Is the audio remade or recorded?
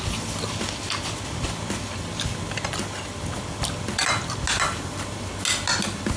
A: recorded